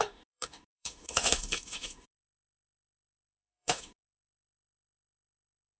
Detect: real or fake fake